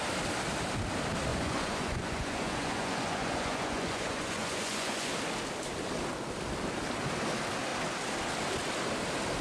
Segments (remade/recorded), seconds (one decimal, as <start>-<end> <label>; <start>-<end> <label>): 0.0-1.3 recorded; 1.3-5.1 remade; 5.1-9.4 recorded